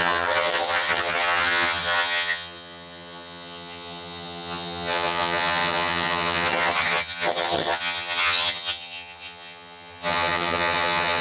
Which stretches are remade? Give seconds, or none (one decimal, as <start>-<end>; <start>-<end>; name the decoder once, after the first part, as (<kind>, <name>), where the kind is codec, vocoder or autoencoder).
0.0-11.2 (vocoder, HiFi-GAN)